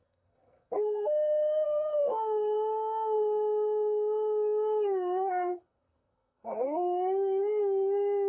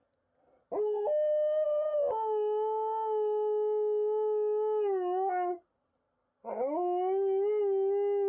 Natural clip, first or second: second